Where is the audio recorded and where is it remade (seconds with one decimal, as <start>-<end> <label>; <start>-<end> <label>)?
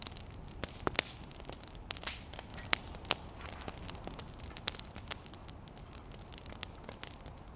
0.0-7.6 recorded